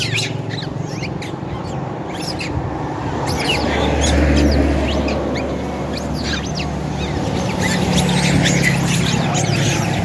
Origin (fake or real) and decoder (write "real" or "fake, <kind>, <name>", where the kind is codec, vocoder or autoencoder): real